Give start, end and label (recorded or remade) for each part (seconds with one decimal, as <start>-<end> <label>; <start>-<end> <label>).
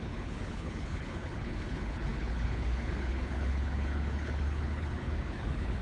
0.0-5.8 remade